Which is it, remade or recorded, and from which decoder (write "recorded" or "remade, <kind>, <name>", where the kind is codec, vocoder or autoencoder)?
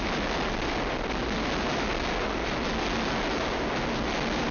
recorded